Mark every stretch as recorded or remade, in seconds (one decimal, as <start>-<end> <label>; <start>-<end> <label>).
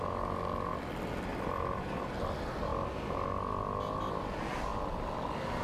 0.0-0.7 recorded; 0.7-2.0 remade; 2.0-5.6 recorded